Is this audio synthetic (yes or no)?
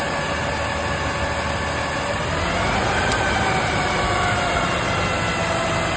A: no